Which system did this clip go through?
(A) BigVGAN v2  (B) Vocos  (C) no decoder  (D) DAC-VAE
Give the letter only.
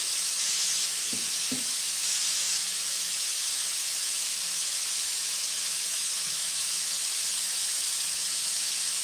D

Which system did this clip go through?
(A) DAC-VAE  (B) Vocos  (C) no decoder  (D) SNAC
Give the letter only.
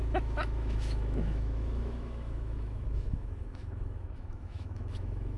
A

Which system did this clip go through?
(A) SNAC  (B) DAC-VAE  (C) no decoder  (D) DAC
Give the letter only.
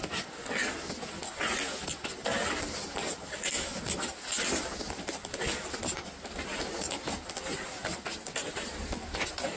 C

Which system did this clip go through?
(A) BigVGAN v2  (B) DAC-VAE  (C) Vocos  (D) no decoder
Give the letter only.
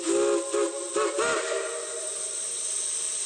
D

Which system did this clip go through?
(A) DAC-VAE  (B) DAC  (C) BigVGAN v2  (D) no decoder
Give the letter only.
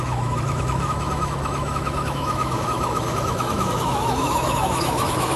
A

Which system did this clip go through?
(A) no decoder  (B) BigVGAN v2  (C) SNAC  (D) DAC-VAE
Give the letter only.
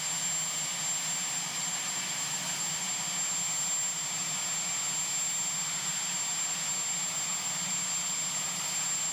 A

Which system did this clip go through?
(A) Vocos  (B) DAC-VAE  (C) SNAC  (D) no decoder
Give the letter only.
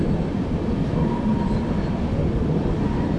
D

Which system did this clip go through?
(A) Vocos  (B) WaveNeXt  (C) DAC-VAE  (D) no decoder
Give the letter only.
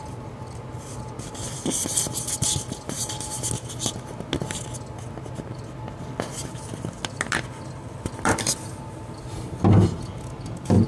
D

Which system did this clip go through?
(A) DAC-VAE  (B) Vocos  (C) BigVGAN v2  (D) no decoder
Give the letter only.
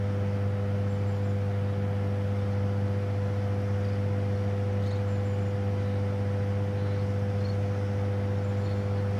D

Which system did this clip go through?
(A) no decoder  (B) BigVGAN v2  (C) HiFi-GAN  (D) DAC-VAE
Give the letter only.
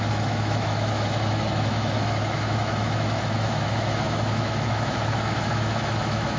D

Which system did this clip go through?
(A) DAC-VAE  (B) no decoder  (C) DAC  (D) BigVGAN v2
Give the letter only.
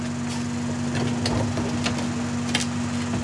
B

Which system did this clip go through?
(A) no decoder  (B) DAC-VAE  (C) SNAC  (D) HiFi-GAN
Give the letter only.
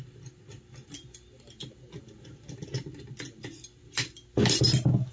A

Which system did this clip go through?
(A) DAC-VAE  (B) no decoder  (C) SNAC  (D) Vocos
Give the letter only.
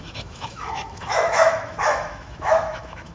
A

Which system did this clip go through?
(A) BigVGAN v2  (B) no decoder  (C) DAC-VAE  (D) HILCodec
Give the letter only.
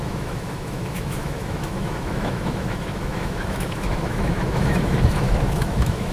C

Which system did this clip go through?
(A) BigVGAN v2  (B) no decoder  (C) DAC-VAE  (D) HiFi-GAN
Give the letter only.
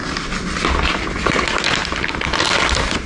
B